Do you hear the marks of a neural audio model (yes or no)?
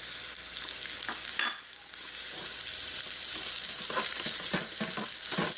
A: no